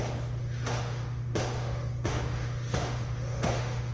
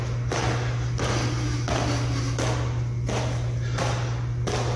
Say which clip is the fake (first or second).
first